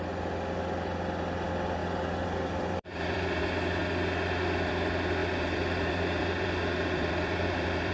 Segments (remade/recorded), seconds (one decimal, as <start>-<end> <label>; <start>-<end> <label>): 0.0-1.8 recorded; 1.8-3.4 remade; 3.4-5.2 recorded; 5.2-7.9 remade